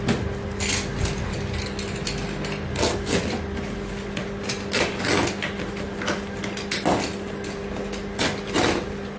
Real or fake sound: real